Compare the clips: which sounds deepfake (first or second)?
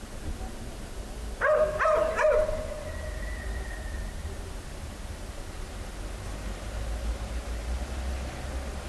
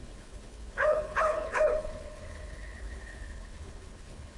second